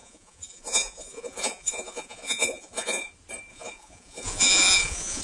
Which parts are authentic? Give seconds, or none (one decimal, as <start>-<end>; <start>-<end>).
3.1-3.5